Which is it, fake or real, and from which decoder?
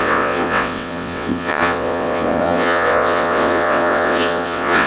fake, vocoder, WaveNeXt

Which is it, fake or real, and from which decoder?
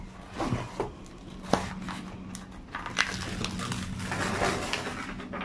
real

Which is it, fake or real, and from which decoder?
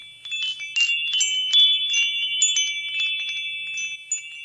real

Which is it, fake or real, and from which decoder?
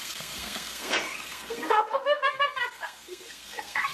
fake, codec, SNAC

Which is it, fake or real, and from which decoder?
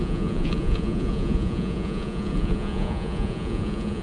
fake, vocoder, Vocos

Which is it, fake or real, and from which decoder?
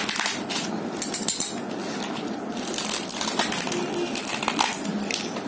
real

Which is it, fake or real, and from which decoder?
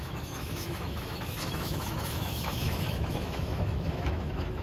fake, autoencoder, DAC-VAE